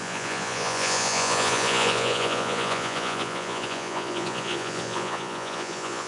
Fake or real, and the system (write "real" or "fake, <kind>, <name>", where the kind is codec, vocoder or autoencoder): fake, vocoder, Vocos